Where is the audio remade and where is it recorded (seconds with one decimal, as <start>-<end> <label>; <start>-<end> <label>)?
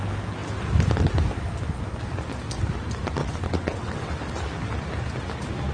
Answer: 0.0-3.2 recorded; 3.2-4.1 remade; 4.1-5.7 recorded